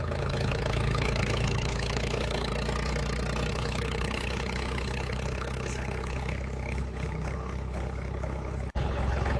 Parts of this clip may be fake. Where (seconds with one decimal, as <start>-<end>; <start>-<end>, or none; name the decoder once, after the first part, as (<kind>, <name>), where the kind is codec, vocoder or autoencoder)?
0.0-2.5 (codec, HILCodec); 3.5-9.4